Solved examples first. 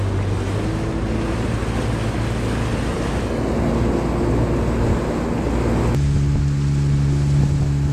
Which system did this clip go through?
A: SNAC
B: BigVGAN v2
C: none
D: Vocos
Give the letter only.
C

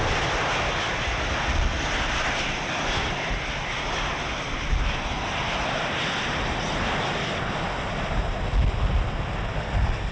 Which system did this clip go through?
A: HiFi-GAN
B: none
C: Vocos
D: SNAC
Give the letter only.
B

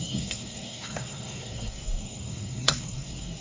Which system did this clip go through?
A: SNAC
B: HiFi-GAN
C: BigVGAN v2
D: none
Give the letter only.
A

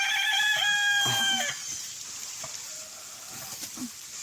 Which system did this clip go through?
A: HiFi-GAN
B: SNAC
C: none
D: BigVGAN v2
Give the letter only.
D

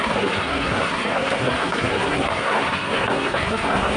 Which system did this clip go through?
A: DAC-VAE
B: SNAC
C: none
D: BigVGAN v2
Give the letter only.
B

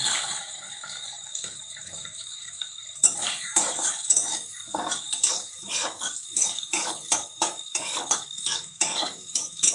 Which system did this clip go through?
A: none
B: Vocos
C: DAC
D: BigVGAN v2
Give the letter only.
C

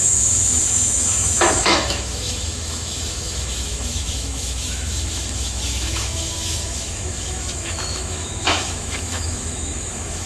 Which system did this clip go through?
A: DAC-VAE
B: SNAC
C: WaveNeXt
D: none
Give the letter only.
A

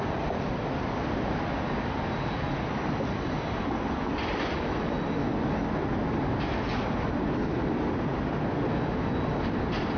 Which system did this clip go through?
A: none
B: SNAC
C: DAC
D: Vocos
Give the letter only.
A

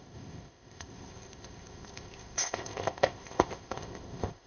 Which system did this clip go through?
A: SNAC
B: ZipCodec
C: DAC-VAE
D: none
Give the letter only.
B